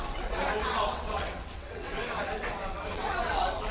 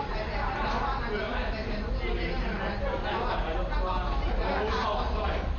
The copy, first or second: first